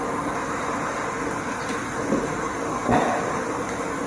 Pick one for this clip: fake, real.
real